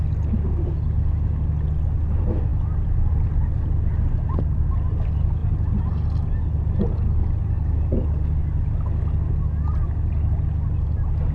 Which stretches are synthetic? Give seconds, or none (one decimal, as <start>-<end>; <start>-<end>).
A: none

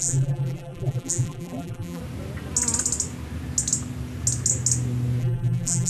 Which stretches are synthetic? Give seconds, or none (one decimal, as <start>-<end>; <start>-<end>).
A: 0.0-2.0; 5.2-5.9